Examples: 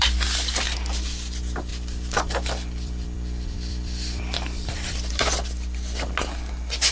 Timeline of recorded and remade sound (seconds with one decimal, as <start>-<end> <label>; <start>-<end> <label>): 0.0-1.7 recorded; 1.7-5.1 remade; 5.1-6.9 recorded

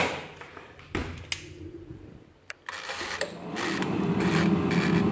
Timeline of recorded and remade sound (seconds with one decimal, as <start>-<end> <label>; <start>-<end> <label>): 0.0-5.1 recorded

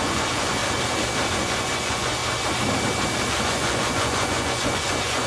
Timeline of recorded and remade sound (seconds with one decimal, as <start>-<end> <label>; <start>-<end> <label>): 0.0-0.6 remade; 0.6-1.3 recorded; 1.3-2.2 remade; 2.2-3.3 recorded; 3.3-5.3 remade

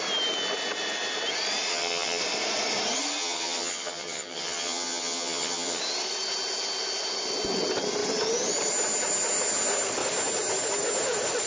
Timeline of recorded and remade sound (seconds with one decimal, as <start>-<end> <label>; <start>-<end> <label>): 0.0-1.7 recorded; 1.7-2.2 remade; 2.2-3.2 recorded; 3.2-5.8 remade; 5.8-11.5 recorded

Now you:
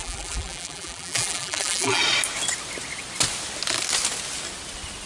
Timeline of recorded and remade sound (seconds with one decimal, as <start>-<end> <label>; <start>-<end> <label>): 0.0-2.0 remade; 2.0-5.1 recorded

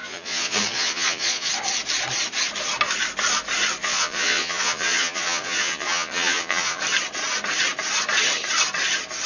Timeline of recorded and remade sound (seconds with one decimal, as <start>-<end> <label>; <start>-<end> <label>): 0.0-1.5 remade; 1.5-3.8 recorded; 3.8-6.8 remade; 6.8-9.3 recorded